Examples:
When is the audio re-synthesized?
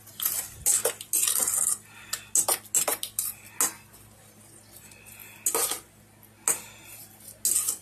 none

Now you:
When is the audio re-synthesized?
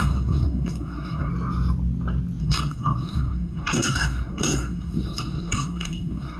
0.0-1.3 (codec, SNAC); 2.4-6.4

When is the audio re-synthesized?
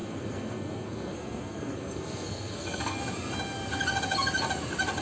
0.0-3.0 (codec, SNAC)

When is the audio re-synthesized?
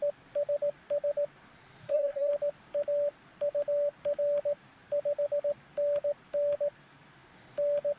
1.8-2.3 (codec, SNAC)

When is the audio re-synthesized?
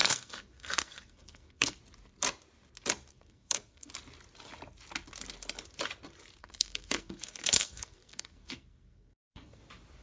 0.0-1.8 (codec, SNAC); 3.1-3.9; 6.4-9.6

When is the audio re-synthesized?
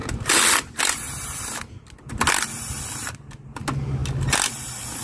none